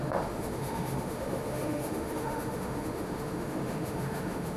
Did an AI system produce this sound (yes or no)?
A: yes